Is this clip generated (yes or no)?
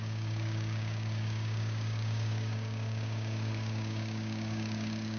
yes